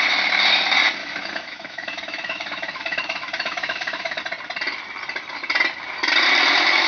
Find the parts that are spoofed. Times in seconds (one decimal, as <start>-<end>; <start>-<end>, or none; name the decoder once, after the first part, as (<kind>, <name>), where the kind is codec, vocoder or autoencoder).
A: 1.0-4.2 (autoencoder, DAC-VAE)